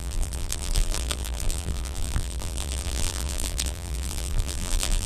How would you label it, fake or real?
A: fake